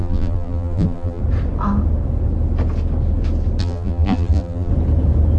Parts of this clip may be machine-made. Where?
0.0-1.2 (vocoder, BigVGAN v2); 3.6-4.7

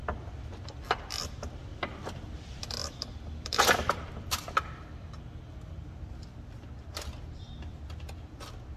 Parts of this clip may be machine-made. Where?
1.7-4.8 (vocoder, BigVGAN v2); 7.7-8.4

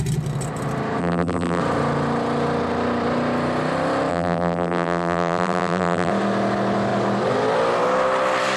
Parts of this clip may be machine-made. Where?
1.0-1.6 (vocoder, BigVGAN v2); 4.1-6.1

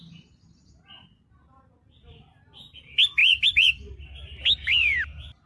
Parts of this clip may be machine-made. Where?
3.2-3.9 (vocoder, BigVGAN v2)

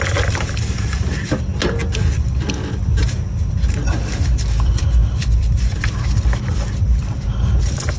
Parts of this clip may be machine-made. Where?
0.0-1.5 (vocoder, BigVGAN v2); 2.1-8.0

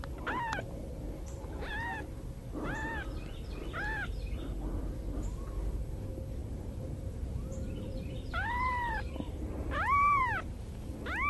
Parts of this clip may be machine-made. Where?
6.4-10.7 (vocoder, BigVGAN v2)

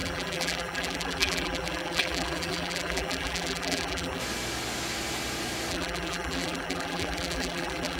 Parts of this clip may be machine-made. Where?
0.0-4.2 (vocoder, BigVGAN v2); 5.7-8.0